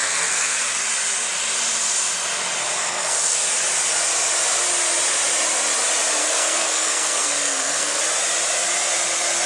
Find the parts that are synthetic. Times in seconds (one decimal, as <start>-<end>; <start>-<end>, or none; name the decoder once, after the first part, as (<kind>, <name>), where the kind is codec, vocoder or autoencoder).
0.0-0.8 (codec, SNAC); 2.8-3.4; 6.2-8.0